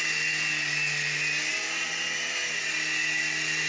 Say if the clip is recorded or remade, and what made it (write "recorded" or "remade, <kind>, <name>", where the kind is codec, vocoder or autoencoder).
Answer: recorded